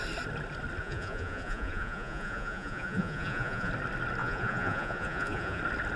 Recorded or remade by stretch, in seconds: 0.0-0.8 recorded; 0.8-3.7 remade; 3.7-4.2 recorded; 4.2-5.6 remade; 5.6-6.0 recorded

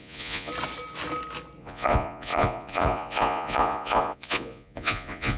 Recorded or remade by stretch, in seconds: 0.0-0.5 remade; 0.5-1.6 recorded; 1.6-5.4 remade

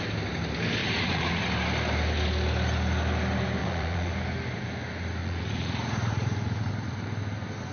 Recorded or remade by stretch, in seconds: 0.0-0.8 recorded; 0.8-1.4 remade; 1.4-3.6 recorded; 3.6-4.1 remade; 4.1-5.2 recorded; 5.2-6.7 remade; 6.7-7.7 recorded

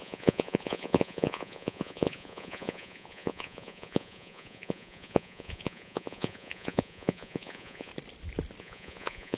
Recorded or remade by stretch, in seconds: 0.0-7.9 remade; 7.9-8.6 recorded; 8.6-9.4 remade

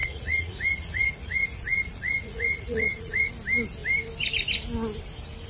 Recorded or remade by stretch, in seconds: 0.0-3.3 remade; 3.3-5.5 recorded

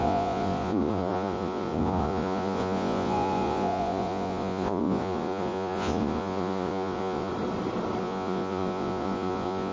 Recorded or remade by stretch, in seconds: 0.0-7.3 remade; 7.3-8.0 recorded; 8.0-9.7 remade